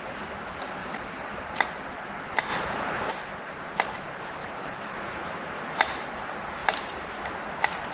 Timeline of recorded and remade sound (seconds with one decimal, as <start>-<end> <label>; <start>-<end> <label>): 0.0-0.8 recorded; 0.8-1.7 remade; 1.7-2.5 recorded; 2.5-3.1 remade; 3.1-4.4 recorded; 4.4-4.9 remade; 4.9-6.6 recorded; 6.6-7.1 remade; 7.1-7.9 recorded